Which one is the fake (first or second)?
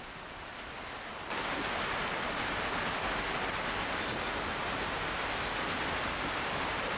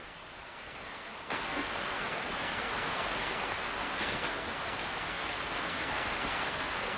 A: second